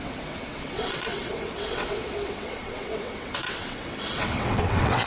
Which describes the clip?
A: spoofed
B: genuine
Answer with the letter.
A